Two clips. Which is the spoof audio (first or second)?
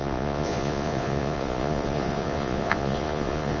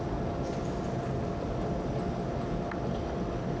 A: first